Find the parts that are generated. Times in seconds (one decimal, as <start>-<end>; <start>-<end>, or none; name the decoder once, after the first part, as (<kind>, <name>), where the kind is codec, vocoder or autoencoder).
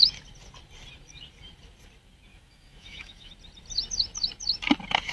2.3-3.3 (autoencoder, DAC-VAE)